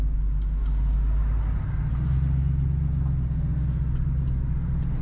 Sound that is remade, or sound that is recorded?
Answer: recorded